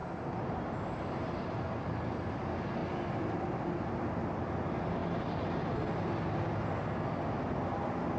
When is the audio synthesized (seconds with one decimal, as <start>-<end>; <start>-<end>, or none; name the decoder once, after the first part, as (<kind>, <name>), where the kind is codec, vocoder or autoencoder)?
2.8-4.0 (vocoder, BigVGAN v2)